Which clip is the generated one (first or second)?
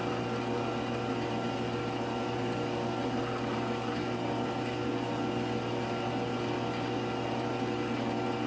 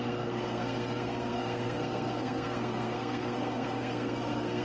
second